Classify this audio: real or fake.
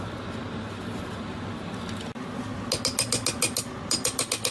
real